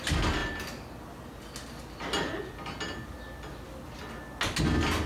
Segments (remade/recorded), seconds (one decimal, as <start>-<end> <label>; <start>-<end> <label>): 0.0-5.1 recorded

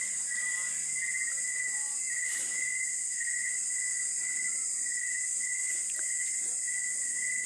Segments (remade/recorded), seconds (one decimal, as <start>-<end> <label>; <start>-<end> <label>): 0.0-7.5 recorded

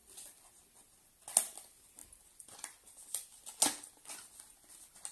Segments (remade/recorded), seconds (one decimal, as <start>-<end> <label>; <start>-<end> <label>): 0.0-5.1 recorded

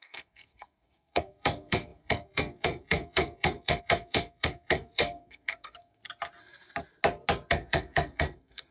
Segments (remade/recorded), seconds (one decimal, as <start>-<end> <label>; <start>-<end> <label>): 0.0-6.0 remade; 6.0-7.5 recorded; 7.5-8.7 remade

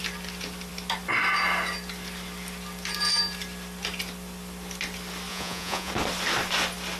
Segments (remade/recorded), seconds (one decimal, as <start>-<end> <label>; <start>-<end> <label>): 0.0-5.3 recorded; 5.3-5.9 remade; 5.9-7.0 recorded